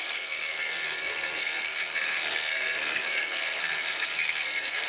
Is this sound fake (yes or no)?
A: yes